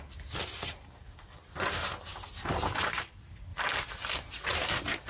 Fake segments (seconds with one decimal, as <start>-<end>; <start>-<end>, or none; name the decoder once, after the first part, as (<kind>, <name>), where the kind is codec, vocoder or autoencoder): none